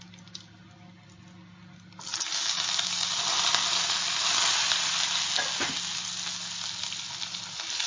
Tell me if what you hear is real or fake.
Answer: real